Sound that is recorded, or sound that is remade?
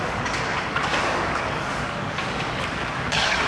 remade